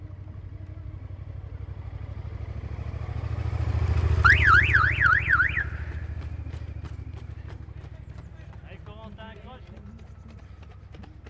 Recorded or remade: recorded